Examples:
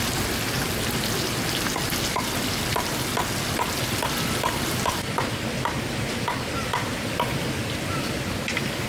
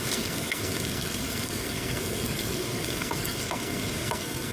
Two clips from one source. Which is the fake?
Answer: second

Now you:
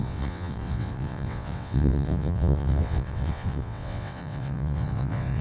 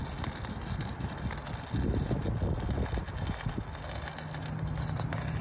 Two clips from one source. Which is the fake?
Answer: first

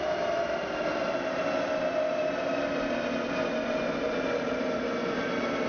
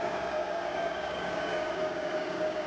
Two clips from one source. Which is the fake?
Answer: second